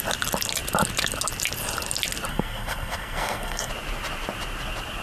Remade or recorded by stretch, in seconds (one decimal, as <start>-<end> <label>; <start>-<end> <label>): 0.0-2.3 recorded; 2.3-3.7 remade; 3.7-5.0 recorded